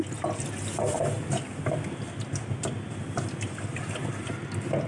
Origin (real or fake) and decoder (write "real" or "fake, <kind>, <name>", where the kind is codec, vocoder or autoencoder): real